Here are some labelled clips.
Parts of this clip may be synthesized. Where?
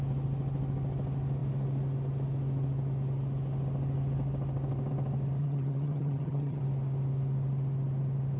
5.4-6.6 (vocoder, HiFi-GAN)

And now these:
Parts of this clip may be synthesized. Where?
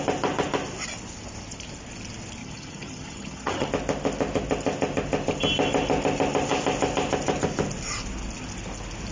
2.4-3.7 (vocoder, HiFi-GAN)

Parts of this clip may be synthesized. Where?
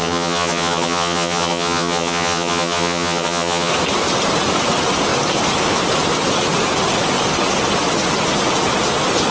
0.0-3.7 (vocoder, HiFi-GAN)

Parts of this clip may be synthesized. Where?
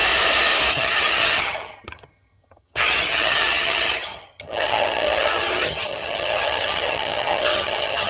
0.7-8.1 (vocoder, HiFi-GAN)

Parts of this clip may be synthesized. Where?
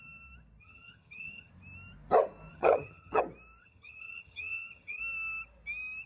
0.6-1.5 (vocoder, HiFi-GAN); 2.5-3.2; 3.6-5.0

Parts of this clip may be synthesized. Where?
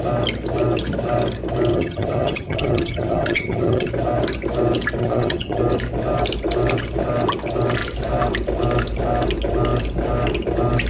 1.7-3.9 (vocoder, HiFi-GAN); 5.0-5.6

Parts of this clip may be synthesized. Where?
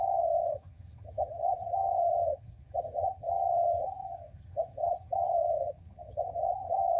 0.0-7.0 (vocoder, HiFi-GAN)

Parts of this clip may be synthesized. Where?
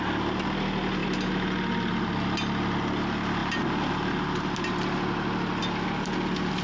none